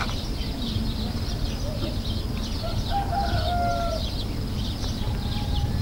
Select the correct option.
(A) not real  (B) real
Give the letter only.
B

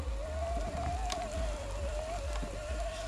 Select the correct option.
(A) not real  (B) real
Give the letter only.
B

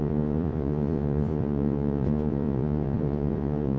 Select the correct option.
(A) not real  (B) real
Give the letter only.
A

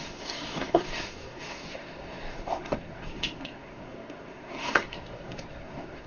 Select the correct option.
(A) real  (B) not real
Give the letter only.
B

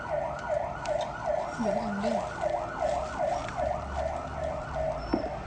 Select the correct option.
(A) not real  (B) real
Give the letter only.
B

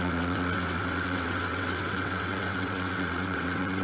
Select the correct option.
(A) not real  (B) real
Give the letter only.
A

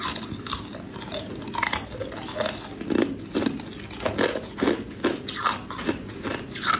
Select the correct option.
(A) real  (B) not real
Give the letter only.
A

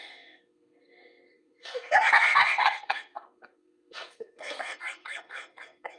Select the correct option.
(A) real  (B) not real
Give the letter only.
B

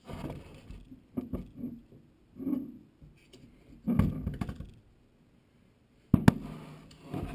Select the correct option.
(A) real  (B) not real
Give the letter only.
A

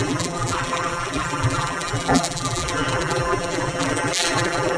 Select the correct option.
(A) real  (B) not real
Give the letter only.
B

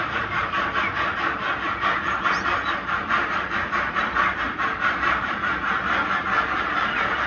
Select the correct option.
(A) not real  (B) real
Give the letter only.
A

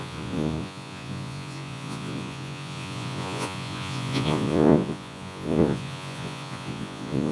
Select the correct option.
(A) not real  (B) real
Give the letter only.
A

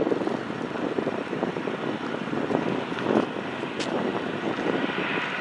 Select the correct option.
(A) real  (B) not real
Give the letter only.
A